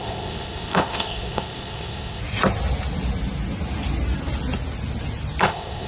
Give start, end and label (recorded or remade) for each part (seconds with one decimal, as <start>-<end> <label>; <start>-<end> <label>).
0.0-2.2 remade; 2.2-5.4 recorded; 5.4-5.9 remade